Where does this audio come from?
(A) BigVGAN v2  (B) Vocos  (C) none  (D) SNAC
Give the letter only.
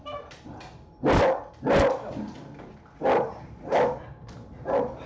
C